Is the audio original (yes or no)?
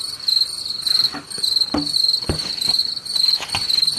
yes